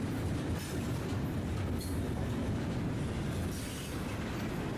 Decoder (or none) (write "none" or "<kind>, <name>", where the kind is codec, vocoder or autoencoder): none